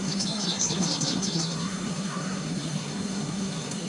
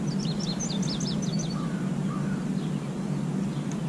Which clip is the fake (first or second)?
first